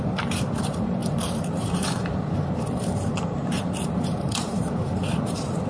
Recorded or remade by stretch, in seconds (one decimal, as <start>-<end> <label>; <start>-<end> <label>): 0.0-5.7 remade